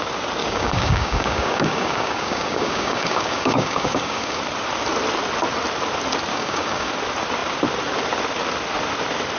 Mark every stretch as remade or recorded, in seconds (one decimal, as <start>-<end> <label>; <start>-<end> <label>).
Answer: 0.0-0.4 recorded; 0.4-4.4 remade; 4.4-6.3 recorded; 6.3-6.9 remade; 6.9-9.4 recorded